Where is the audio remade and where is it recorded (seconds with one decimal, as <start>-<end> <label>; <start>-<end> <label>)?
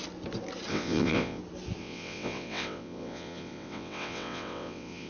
0.0-0.7 recorded; 0.7-1.4 remade; 1.4-1.8 recorded; 1.8-5.1 remade